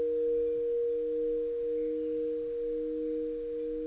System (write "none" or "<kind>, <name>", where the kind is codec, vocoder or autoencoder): none